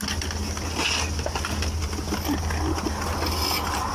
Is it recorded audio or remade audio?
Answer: recorded